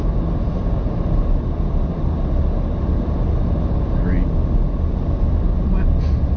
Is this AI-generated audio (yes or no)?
no